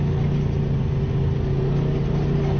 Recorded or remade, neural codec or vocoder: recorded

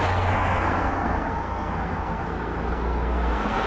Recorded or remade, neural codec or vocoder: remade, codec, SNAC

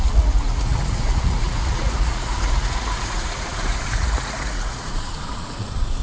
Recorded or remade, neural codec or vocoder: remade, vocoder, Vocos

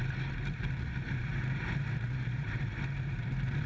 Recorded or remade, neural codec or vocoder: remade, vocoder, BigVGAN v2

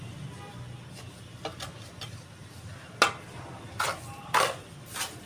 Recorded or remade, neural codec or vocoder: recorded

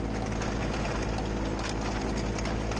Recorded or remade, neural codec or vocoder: recorded